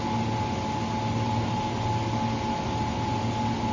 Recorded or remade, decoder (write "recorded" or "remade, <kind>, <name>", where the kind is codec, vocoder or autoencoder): recorded